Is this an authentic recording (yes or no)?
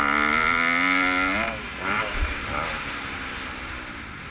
yes